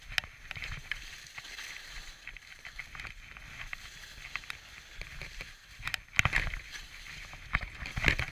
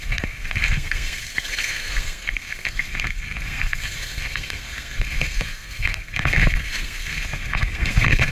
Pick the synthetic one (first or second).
second